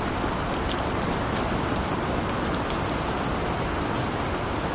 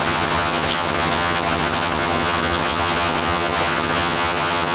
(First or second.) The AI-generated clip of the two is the second